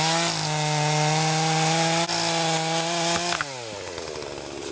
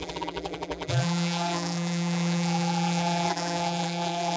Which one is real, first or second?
first